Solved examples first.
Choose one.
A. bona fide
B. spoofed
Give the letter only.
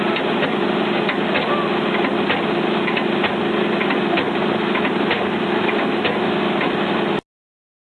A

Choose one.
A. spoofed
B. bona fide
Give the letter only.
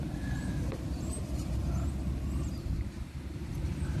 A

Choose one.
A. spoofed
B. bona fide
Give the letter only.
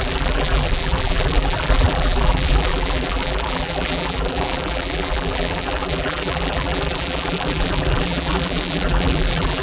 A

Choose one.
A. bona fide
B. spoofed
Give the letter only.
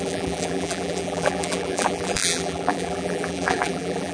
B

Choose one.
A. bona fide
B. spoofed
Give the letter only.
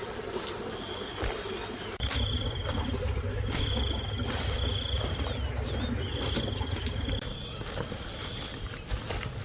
A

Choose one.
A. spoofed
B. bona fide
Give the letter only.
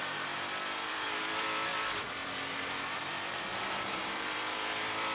A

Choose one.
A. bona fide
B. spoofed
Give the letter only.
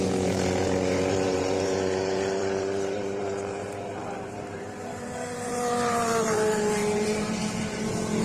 B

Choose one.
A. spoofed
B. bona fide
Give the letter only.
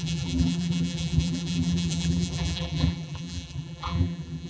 A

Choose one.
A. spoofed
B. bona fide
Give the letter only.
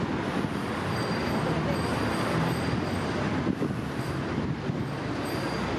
B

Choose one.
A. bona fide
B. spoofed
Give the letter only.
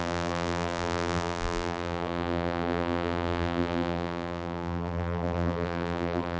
B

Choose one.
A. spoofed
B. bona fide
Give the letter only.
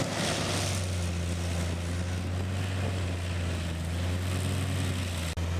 B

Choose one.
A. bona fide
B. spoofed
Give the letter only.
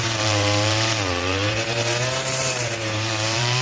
B